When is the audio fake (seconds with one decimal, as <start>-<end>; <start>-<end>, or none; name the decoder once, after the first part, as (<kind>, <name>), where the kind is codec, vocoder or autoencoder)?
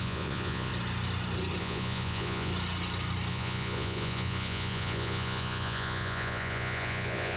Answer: 0.0-0.7 (vocoder, Vocos); 1.6-2.5; 3.3-7.4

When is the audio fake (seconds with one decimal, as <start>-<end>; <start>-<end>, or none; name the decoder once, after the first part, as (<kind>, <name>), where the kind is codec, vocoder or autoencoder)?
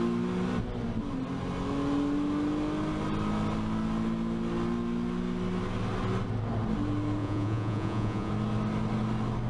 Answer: 7.2-8.3 (vocoder, Vocos)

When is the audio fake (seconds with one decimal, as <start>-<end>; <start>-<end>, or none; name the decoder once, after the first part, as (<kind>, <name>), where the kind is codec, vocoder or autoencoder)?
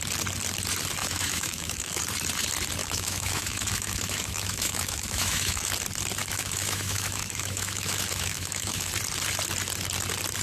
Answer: 1.0-2.0 (autoencoder, DAC-VAE); 2.8-5.7; 6.2-8.9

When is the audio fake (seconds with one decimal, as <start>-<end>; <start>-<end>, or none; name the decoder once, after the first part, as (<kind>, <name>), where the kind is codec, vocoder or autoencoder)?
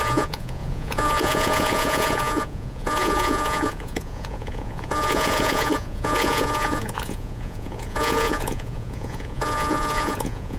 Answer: 0.0-10.6 (vocoder, Vocos)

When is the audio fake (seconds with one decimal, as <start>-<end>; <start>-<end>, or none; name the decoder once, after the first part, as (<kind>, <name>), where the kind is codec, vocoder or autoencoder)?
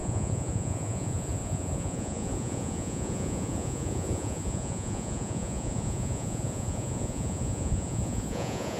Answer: 0.0-8.8 (vocoder, Vocos)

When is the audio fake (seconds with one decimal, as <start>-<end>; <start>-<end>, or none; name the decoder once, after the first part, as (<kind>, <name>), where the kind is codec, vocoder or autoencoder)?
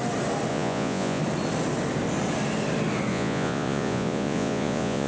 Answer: 0.5-1.2 (vocoder, Vocos); 3.1-5.1